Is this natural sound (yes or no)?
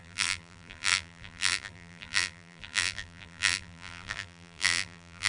no